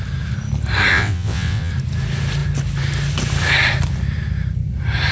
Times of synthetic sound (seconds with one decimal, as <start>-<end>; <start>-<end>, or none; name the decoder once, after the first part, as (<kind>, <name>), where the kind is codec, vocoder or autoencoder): 0.9-1.7 (vocoder, WaveNeXt)